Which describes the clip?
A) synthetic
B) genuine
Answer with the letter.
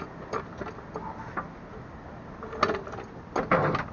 B